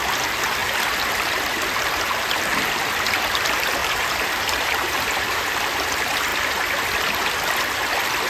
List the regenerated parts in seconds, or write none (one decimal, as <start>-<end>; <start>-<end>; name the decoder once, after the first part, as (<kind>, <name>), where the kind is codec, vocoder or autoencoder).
3.8-5.5 (vocoder, BigVGAN v2)